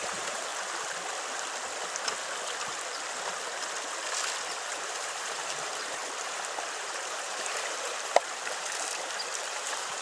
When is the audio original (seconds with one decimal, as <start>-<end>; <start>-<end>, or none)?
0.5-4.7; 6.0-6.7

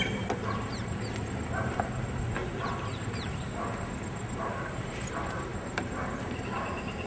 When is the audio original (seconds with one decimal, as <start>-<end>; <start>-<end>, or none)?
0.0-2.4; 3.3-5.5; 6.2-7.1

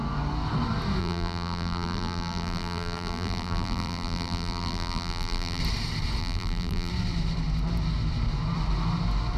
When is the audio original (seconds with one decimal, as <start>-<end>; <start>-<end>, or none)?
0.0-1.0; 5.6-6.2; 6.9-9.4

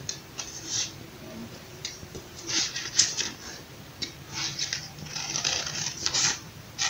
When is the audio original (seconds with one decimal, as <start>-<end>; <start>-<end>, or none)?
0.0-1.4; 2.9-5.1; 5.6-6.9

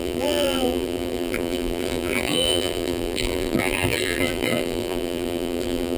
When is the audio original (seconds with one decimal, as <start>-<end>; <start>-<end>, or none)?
none

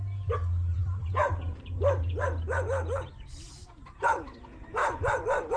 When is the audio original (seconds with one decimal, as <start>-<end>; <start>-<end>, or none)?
0.0-0.7; 3.6-4.8

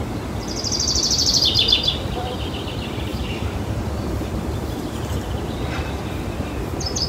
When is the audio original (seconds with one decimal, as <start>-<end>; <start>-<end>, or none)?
0.0-3.1; 4.3-7.1

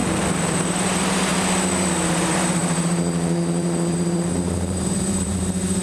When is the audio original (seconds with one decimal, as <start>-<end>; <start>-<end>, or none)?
0.0-0.5; 1.3-2.1